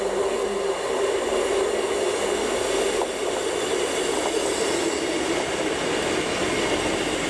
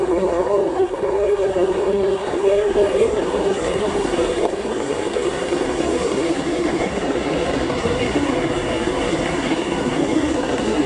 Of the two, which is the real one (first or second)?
first